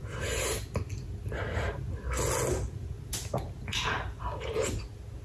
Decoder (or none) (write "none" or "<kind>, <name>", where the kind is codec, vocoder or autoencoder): none